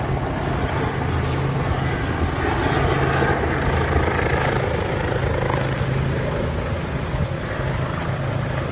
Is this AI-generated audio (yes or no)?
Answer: no